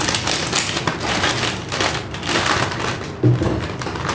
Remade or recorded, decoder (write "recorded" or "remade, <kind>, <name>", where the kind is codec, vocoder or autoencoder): recorded